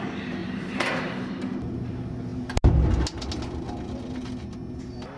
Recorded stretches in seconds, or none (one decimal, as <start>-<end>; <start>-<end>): 0.0-0.4; 1.6-5.2